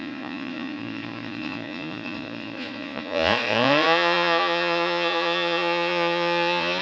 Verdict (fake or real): fake